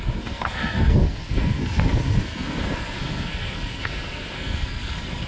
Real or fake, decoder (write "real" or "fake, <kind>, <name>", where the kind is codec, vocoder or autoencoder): fake, codec, SNAC